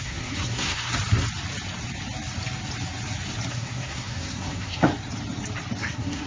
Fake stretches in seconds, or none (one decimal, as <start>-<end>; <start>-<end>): 0.0-0.9; 3.5-4.9; 5.8-6.3